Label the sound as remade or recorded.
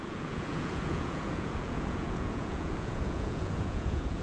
remade